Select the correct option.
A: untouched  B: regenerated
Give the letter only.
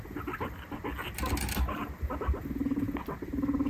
A